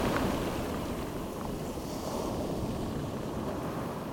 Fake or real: fake